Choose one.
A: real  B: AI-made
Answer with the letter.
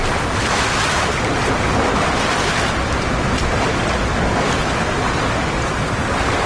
A